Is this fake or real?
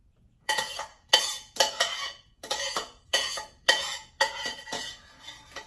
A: fake